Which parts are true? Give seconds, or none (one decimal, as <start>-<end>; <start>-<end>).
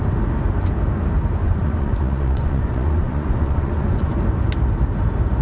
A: 0.0-1.4; 4.1-5.4